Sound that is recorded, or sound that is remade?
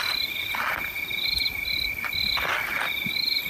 recorded